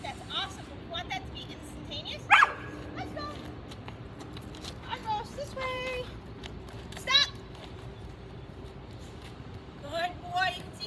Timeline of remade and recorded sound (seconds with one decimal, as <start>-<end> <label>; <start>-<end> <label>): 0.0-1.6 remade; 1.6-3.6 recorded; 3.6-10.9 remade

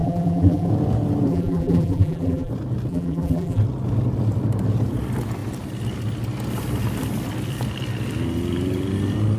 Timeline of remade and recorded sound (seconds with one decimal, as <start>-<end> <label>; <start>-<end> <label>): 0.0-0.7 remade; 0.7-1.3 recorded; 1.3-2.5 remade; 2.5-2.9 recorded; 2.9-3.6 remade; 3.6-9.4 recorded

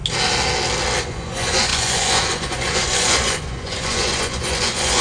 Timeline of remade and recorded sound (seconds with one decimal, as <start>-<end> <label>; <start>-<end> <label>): 0.0-1.0 recorded; 1.0-5.0 remade